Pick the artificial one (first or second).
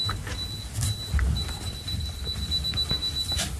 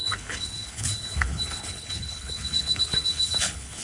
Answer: second